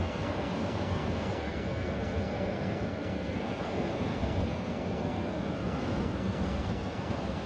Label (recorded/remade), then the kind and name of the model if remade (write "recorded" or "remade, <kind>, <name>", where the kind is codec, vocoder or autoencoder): remade, codec, SNAC